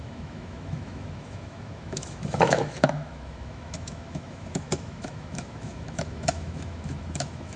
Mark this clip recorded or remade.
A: remade